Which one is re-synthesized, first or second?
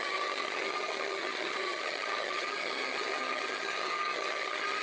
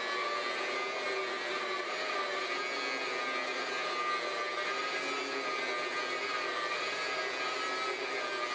first